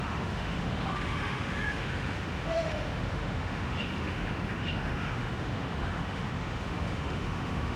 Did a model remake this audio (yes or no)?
yes